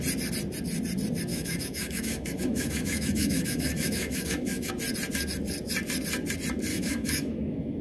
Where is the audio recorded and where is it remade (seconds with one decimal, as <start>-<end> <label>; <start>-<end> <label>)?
0.0-1.3 recorded; 1.3-4.7 remade; 4.7-6.7 recorded; 6.7-7.8 remade